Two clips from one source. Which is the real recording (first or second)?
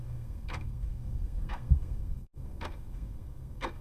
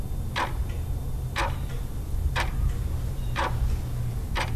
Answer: second